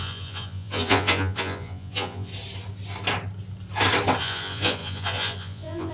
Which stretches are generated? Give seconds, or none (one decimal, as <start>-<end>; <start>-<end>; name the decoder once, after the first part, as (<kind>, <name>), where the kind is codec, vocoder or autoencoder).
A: 0.0-2.3 (vocoder, Vocos); 4.2-5.9

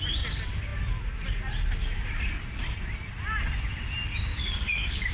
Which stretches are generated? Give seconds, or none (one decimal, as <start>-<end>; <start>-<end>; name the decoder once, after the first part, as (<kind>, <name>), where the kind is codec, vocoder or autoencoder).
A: 4.3-5.1 (codec, DAC)

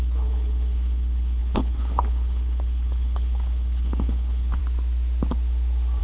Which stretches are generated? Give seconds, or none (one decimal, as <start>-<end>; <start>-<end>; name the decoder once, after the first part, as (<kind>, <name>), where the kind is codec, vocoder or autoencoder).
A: 0.0-4.6 (codec, HILCodec)

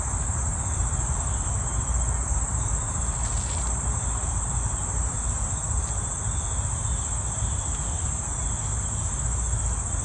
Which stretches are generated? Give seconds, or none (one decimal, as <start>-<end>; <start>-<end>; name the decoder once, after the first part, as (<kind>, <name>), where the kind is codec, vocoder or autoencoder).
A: none

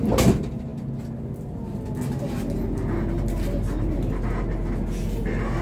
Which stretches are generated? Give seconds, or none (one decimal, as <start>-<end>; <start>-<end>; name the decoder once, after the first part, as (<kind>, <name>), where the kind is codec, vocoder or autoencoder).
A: none

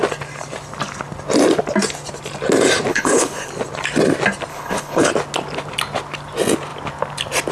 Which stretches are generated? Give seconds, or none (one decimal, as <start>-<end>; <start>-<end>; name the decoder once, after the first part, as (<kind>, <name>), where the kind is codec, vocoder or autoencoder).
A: 2.9-3.5 (codec, HILCodec); 4.5-5.1

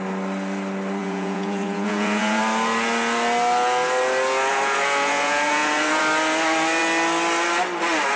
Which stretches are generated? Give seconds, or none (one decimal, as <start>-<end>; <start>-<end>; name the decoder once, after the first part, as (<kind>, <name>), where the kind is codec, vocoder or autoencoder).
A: 1.0-2.4 (vocoder, Vocos); 4.5-6.0

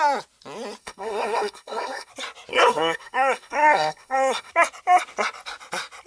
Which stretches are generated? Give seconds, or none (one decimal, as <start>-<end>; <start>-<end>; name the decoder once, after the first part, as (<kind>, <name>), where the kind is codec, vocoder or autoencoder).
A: 0.8-2.1 (codec, SNAC); 2.5-4.5